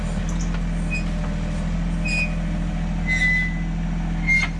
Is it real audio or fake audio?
real